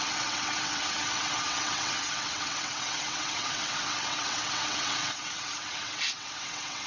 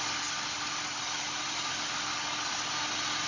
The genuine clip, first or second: second